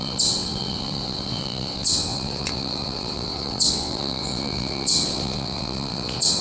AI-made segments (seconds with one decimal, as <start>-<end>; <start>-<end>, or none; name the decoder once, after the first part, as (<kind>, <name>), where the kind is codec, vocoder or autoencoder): 0.0-6.4 (vocoder, WaveNeXt)